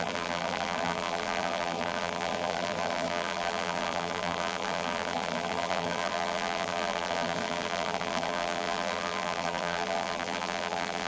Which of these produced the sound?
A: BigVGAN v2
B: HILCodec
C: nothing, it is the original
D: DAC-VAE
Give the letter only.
A